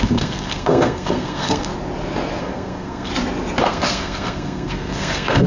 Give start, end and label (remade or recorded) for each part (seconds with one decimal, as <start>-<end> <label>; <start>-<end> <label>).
0.0-1.7 remade; 1.7-2.4 recorded; 2.4-3.1 remade; 3.1-3.6 recorded; 3.6-5.5 remade